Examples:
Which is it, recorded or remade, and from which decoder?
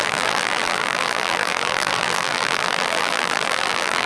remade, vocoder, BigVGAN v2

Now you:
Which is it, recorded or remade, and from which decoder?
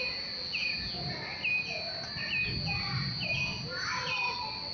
recorded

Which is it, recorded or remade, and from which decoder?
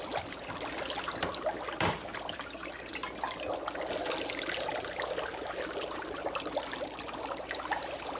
recorded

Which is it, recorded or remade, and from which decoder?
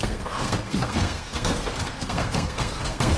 remade, codec, SNAC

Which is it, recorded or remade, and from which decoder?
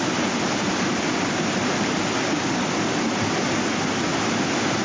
recorded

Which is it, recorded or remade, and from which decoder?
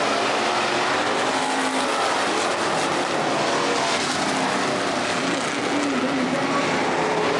recorded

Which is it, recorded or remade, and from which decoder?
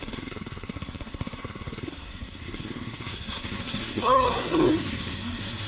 remade, codec, SNAC